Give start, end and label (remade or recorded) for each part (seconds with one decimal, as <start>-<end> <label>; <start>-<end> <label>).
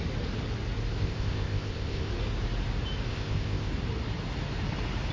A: 0.0-1.0 recorded; 1.0-2.1 remade; 2.1-3.1 recorded; 3.1-3.7 remade; 3.7-5.1 recorded